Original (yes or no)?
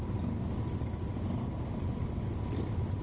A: yes